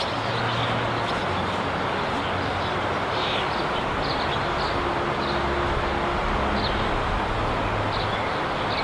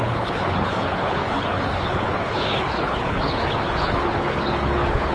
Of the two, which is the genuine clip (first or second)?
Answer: first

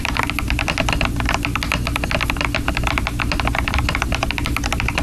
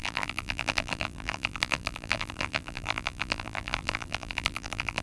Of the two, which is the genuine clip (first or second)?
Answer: first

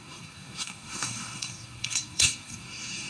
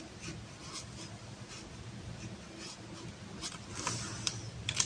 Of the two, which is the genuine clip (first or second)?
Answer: second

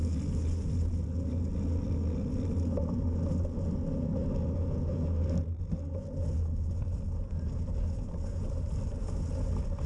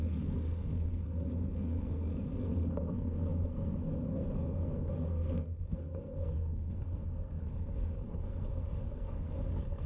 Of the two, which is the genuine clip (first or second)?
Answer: first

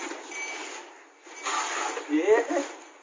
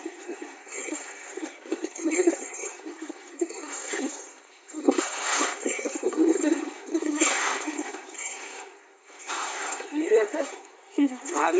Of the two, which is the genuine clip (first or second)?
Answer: first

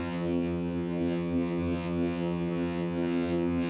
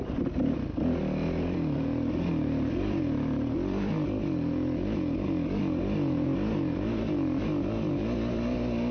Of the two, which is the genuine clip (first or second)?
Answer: second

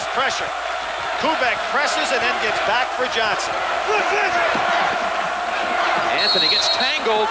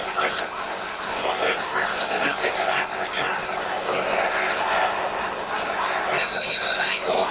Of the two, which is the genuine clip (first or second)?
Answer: first